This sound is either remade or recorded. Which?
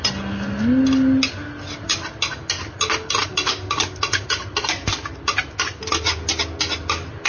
recorded